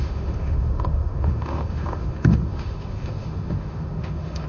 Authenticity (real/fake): fake